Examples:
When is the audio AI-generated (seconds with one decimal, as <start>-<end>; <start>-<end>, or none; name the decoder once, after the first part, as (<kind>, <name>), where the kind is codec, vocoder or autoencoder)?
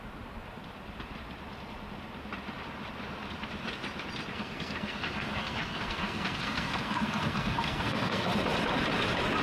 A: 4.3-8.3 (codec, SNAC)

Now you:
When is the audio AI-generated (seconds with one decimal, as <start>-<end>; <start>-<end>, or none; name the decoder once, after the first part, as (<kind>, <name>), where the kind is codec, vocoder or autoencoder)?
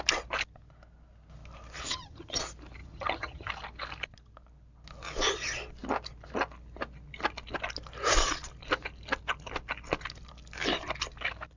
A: 1.9-2.4 (vocoder, HiFi-GAN); 2.8-3.5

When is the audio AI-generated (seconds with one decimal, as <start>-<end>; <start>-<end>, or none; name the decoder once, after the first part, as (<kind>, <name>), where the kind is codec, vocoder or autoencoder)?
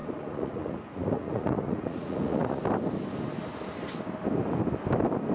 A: 0.0-2.6 (vocoder, Vocos)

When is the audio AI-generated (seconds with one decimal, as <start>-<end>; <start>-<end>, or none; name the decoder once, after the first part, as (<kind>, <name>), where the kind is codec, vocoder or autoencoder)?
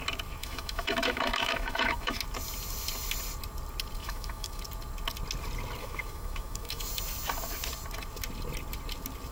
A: 0.4-2.2 (autoencoder, DAC-VAE); 4.0-4.6; 5.8-6.9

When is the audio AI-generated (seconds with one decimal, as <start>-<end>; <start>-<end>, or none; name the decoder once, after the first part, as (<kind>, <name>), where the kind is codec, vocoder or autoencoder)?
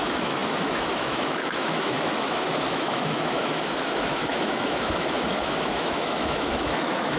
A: 0.0-7.2 (autoencoder, DAC-VAE)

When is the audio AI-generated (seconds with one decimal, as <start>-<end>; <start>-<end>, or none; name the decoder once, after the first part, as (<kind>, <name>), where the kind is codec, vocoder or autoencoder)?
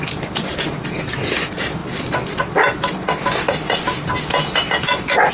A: none